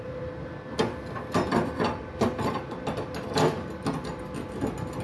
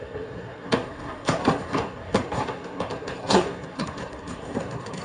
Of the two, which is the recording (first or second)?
first